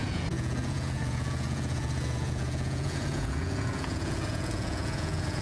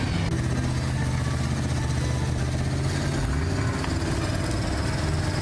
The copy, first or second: first